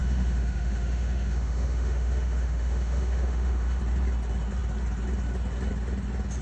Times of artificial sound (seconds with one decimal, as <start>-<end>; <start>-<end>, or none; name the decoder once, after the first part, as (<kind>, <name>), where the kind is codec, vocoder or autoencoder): 0.0-3.8 (autoencoder, DAC-VAE)